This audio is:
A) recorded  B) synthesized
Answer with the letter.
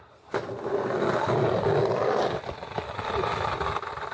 A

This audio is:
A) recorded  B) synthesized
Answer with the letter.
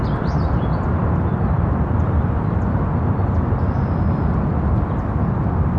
A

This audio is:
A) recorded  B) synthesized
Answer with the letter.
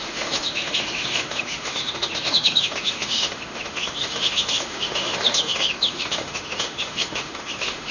B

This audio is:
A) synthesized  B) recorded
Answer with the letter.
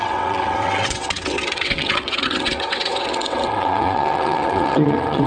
A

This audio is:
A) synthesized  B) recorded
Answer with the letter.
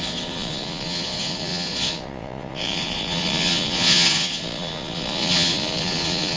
A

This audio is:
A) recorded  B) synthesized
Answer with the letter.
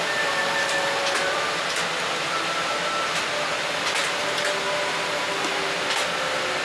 A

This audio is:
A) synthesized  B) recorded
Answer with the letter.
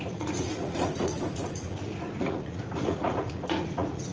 A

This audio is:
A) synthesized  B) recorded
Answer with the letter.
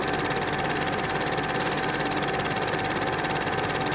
B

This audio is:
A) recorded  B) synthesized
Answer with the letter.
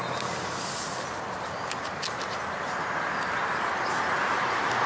A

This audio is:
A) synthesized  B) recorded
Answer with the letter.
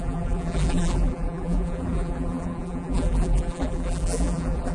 A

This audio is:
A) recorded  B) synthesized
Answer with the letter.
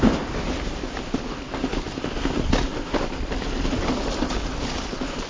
A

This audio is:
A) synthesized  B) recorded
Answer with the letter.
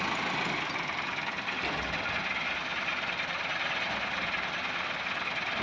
B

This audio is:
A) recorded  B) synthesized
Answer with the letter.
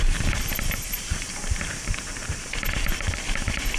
B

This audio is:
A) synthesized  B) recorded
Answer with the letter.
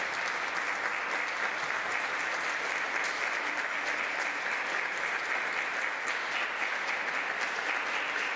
B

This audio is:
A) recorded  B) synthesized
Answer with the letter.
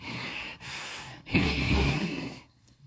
B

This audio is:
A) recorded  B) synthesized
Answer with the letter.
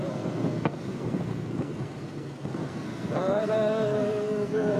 B